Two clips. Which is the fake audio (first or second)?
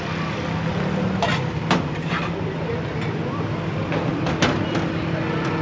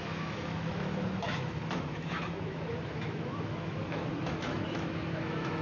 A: second